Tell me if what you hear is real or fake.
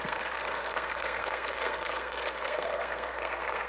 fake